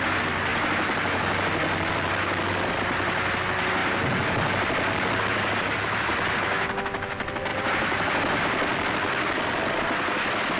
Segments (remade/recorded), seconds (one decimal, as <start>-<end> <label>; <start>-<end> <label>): 0.0-10.6 recorded